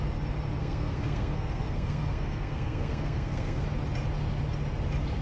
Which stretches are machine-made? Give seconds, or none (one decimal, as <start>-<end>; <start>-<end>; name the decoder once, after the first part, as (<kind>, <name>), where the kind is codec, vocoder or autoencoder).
0.6-3.7 (codec, SNAC)